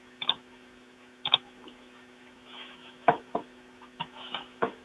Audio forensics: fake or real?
fake